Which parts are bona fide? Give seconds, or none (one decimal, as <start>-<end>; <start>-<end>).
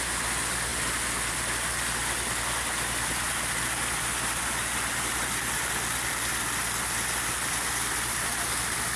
0.0-9.0